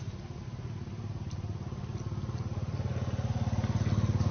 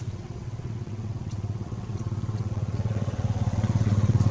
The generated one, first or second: second